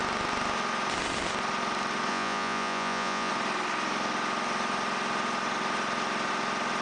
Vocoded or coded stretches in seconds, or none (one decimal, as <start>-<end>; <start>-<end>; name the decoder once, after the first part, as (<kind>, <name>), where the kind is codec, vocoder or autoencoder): 2.1-3.3 (vocoder, Vocos)